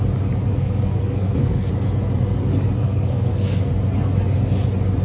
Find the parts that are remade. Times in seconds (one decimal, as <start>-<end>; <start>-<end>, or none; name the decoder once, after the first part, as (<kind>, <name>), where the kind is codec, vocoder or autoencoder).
0.5-1.7 (codec, SNAC); 2.8-3.7